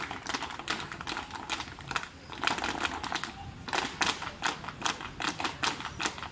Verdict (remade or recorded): recorded